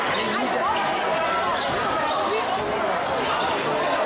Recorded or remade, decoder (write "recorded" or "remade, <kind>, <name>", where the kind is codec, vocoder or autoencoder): recorded